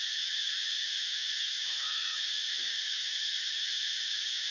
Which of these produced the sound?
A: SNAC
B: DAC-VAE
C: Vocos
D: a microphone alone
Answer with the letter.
B